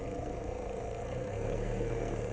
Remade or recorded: remade